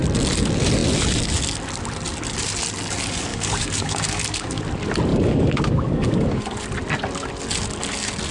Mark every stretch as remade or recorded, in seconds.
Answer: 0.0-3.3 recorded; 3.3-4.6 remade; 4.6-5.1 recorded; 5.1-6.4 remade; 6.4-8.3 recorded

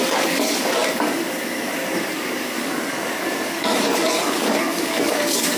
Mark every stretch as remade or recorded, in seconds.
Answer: 0.0-5.6 remade